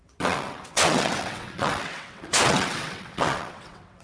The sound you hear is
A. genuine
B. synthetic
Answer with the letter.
B